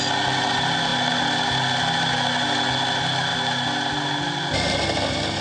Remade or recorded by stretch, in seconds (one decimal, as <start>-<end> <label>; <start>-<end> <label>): 0.0-5.4 recorded